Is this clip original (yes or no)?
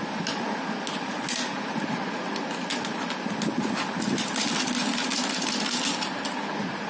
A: yes